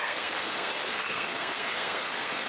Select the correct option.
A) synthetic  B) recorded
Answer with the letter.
A